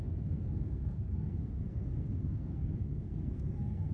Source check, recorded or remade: remade